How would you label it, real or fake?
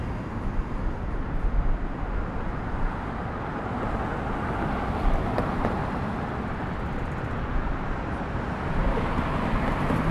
real